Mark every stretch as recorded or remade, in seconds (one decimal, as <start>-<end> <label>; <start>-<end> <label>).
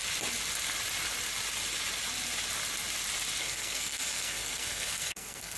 0.0-3.4 recorded; 3.4-5.6 remade